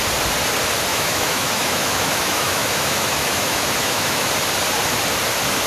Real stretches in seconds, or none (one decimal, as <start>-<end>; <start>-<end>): 0.0-0.9; 4.3-5.7